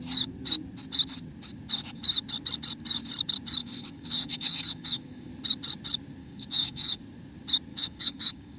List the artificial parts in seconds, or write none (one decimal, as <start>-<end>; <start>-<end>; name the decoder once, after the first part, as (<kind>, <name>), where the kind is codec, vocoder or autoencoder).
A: 3.6-5.3 (codec, DAC); 6.2-7.0; 7.7-8.6